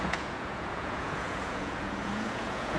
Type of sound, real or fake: fake